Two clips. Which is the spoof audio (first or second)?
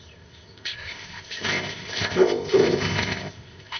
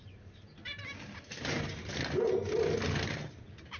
first